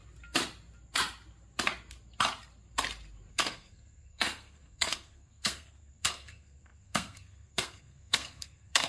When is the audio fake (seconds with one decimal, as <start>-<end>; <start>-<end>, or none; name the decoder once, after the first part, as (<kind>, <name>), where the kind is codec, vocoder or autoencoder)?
3.3-8.9 (codec, SNAC)